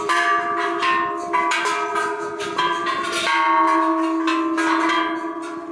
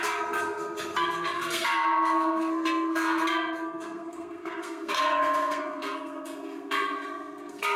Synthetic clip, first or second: second